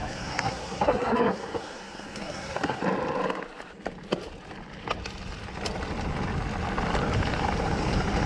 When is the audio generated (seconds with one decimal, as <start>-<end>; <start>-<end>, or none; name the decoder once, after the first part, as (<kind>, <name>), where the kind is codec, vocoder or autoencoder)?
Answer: 0.0-2.8 (codec, SNAC)